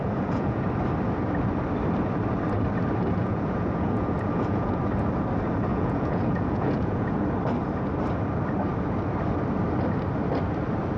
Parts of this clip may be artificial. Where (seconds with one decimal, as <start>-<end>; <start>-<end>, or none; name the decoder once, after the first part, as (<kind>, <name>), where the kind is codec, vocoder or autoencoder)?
0.0-0.6 (vocoder, Vocos); 3.2-4.8; 5.7-7.2